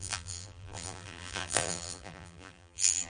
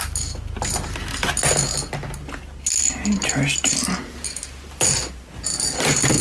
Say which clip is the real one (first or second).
second